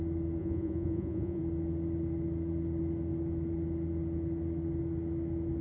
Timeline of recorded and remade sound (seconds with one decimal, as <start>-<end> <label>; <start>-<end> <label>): 0.0-0.4 recorded; 0.4-1.4 remade; 1.4-5.6 recorded